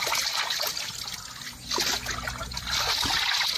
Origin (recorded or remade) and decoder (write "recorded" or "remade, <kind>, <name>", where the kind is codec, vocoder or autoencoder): recorded